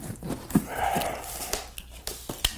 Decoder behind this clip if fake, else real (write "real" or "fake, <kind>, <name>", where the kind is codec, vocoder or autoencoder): real